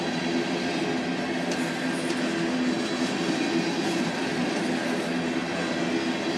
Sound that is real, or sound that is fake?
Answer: real